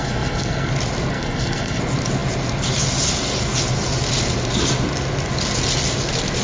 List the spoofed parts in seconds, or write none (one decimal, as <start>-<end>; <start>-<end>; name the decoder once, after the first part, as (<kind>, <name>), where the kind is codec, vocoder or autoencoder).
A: 0.0-0.7 (codec, SNAC); 1.1-1.8

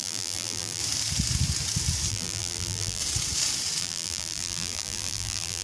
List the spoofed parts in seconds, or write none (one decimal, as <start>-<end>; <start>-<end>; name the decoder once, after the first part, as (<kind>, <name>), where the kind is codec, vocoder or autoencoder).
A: 0.0-0.8 (vocoder, BigVGAN v2); 2.1-3.0; 3.8-5.6